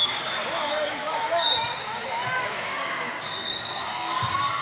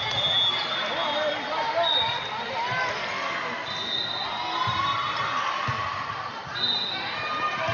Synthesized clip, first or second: first